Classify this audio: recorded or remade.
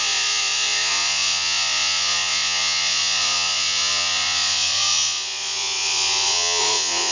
remade